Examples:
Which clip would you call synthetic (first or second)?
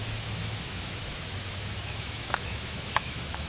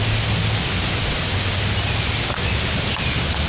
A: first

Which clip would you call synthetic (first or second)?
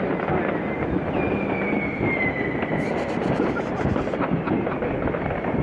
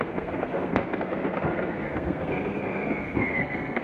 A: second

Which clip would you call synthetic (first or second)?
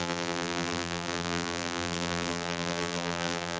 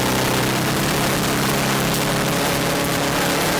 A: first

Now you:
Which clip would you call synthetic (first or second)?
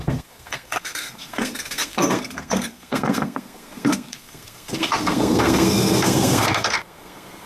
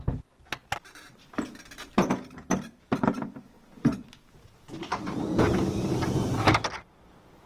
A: first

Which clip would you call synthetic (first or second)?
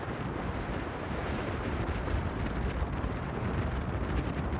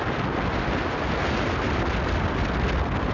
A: first